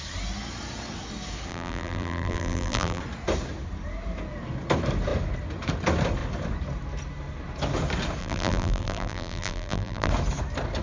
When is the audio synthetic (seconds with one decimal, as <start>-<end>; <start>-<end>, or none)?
1.5-3.0; 8.2-10.1